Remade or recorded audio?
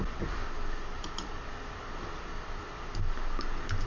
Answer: recorded